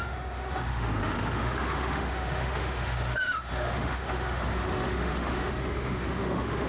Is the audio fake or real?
fake